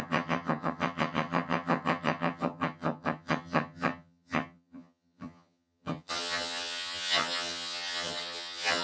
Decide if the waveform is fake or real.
fake